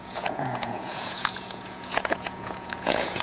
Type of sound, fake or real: fake